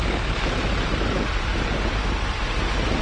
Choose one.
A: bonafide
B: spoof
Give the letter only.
A